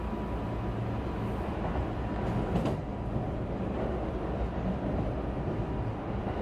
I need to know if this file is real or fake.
real